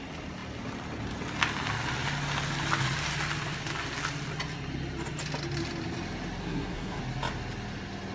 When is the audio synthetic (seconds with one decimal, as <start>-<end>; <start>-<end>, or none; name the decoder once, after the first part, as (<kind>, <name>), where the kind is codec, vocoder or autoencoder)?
6.4-7.0 (codec, SNAC)